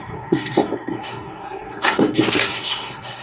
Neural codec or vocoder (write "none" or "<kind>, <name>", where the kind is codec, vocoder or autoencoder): codec, SNAC